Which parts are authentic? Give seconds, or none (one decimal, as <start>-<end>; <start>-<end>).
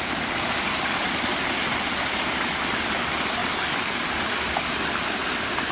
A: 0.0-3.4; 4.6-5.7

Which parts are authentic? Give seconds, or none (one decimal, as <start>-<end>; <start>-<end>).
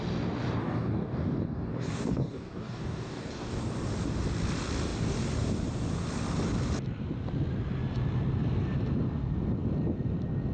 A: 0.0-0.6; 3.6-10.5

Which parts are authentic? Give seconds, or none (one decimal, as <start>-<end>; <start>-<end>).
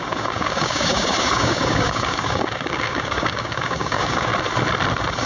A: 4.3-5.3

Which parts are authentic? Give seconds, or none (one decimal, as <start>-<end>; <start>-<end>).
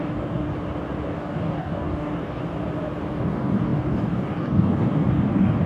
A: 0.5-1.1; 2.4-3.1